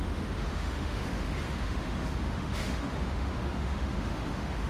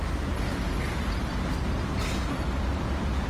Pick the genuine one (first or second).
second